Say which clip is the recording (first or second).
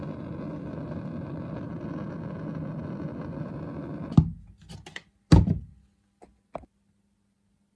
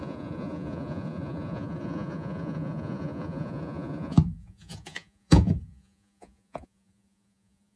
first